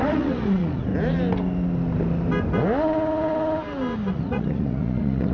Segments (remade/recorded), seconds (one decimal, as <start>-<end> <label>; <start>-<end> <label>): 0.0-0.9 remade; 0.9-4.1 recorded; 4.1-5.3 remade